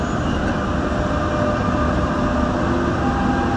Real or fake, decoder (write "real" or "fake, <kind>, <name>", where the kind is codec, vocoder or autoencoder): real